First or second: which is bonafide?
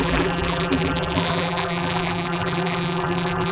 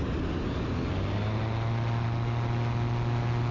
second